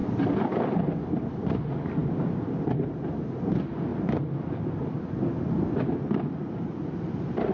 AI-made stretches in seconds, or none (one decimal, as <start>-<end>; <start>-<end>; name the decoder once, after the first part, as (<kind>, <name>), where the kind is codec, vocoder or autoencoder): 0.0-1.6 (vocoder, BigVGAN v2); 2.0-3.1; 3.9-5.0